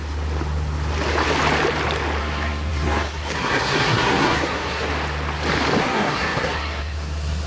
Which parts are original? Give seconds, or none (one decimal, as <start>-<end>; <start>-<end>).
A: 0.0-2.2; 4.9-5.8